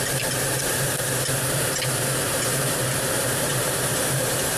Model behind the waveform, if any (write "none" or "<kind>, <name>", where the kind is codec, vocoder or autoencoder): vocoder, BigVGAN v2